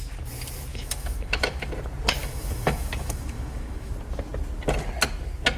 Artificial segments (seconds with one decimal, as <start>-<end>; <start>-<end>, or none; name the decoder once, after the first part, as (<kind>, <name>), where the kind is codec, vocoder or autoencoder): 0.7-1.7 (autoencoder, DAC-VAE); 2.2-3.9